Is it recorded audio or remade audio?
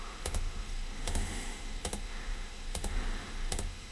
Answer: remade